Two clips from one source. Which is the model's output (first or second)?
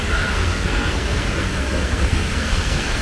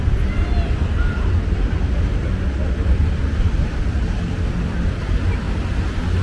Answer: first